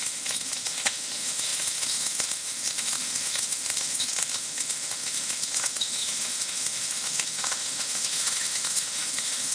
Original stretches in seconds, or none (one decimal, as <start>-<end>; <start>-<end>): none